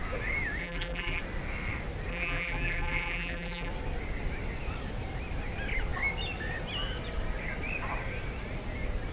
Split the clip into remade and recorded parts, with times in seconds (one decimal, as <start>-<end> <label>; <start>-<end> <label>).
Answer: 0.0-0.6 recorded; 0.6-1.2 remade; 1.2-2.1 recorded; 2.1-3.7 remade; 3.7-9.1 recorded